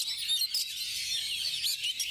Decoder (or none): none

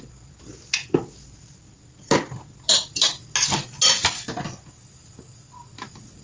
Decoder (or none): none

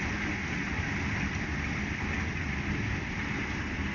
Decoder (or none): none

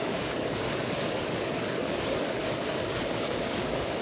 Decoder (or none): codec, DAC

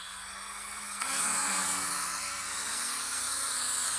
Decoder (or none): codec, SNAC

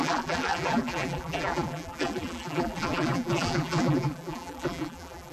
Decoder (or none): vocoder, BigVGAN v2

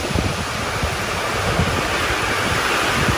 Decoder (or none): none